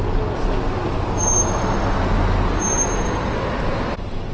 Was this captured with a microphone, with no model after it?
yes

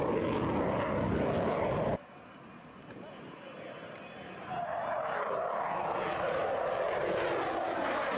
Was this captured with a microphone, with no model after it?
yes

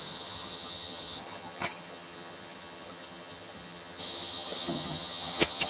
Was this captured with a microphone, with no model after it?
no